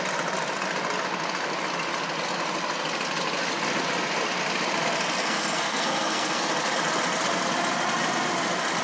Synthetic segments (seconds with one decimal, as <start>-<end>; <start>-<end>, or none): 5.2-6.5